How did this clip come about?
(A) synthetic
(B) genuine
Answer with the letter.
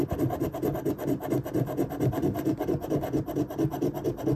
B